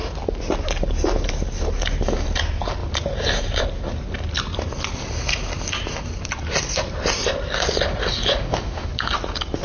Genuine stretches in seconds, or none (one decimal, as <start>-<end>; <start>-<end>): 0.0-8.3; 8.9-9.6